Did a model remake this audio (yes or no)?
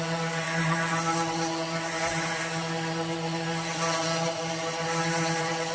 yes